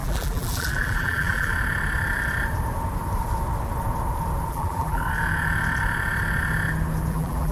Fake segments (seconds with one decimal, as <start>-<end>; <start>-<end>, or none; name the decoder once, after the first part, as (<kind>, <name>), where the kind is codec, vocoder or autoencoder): 0.0-1.5 (vocoder, BigVGAN v2); 4.5-5.0; 7.1-7.5